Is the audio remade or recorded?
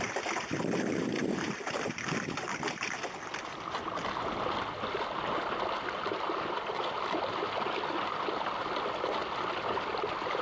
recorded